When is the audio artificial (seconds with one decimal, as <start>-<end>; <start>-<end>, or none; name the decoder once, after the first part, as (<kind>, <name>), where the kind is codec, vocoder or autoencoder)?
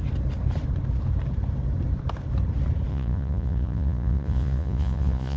2.9-5.4 (vocoder, Vocos)